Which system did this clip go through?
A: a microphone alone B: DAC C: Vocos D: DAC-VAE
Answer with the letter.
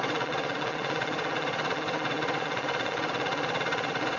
C